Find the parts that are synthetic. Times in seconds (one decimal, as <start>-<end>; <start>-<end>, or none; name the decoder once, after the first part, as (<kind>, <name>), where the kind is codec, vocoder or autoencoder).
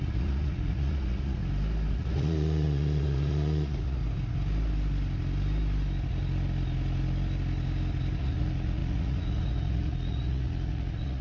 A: 0.0-1.4 (vocoder, Vocos); 1.9-4.0; 8.2-11.2